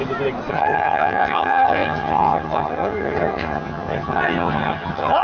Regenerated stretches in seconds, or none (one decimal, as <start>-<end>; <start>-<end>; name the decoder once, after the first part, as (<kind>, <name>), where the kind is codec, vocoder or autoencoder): 0.5-5.2 (vocoder, HiFi-GAN)